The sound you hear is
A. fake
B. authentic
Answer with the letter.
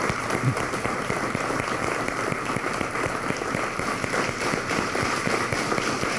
A